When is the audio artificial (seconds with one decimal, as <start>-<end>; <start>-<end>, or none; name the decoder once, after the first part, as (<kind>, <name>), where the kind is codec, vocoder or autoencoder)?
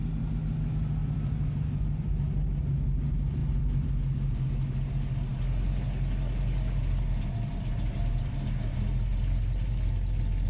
1.0-2.1 (vocoder, BigVGAN v2); 3.4-3.9